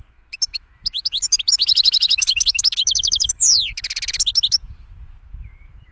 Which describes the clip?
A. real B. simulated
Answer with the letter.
B